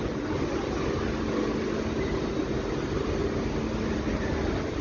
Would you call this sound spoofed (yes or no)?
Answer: no